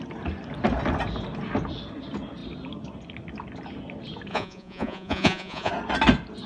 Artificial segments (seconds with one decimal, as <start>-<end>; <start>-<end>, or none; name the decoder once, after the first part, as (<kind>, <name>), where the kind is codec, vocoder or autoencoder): 4.3-5.7 (vocoder, Vocos)